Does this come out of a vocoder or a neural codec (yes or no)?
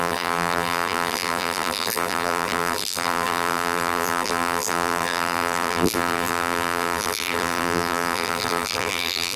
yes